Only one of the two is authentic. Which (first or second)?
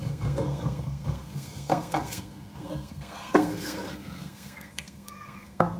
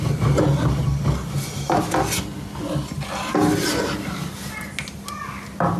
second